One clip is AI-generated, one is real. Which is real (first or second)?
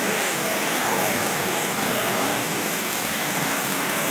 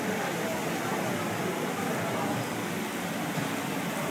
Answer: second